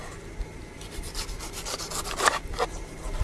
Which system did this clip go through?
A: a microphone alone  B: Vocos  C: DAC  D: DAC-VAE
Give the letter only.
A